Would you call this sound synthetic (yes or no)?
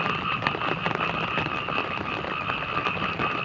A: no